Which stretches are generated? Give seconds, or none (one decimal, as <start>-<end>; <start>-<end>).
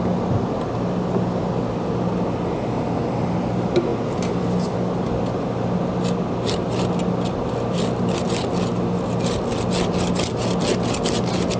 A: none